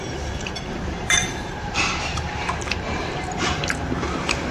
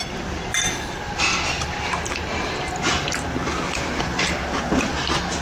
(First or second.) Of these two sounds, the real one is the second